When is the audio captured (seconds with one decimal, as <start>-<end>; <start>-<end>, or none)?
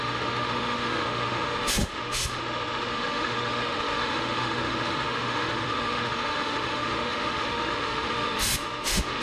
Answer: none